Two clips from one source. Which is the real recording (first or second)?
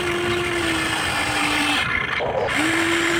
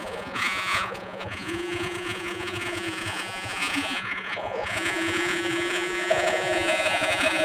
first